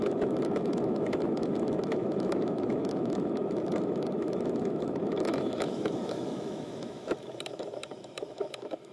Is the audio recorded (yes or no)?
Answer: no